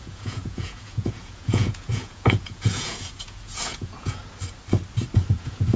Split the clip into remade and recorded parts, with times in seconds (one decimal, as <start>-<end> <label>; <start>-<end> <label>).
0.0-4.2 remade; 4.2-5.3 recorded; 5.3-5.8 remade